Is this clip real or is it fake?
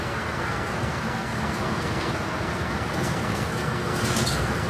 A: fake